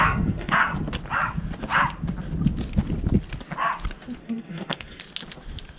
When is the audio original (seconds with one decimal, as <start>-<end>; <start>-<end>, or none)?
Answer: 0.7-4.2; 5.0-5.8